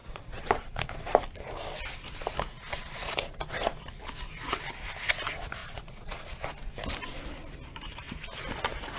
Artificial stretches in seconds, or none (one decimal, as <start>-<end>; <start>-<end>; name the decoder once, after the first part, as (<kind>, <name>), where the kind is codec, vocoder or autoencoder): 0.0-0.9 (vocoder, Vocos); 2.7-3.4; 5.6-6.2